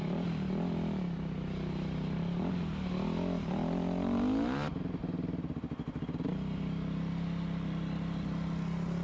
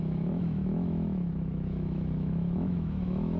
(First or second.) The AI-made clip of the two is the second